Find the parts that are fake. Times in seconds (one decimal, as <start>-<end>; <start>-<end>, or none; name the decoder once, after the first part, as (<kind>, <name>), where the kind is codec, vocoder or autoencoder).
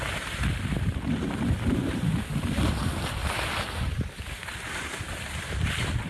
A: none